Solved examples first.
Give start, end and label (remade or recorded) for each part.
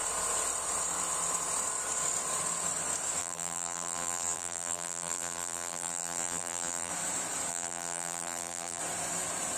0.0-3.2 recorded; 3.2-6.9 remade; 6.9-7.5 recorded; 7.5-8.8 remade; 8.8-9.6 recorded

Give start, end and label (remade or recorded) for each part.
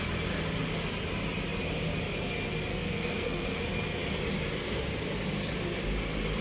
0.0-2.7 recorded; 2.7-3.6 remade; 3.6-6.4 recorded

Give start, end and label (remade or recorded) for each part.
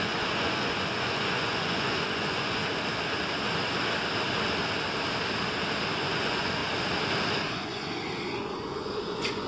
0.0-2.6 remade; 2.6-5.9 recorded; 5.9-6.6 remade; 6.6-7.5 recorded; 7.5-9.5 remade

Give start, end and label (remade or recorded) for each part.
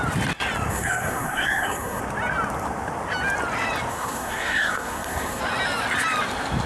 0.0-0.7 recorded; 0.7-2.0 remade; 2.0-3.9 recorded; 3.9-5.4 remade; 5.4-6.7 recorded